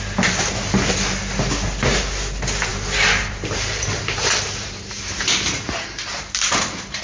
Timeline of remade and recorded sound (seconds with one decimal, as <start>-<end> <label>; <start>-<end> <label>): 0.0-2.7 recorded; 2.7-7.0 remade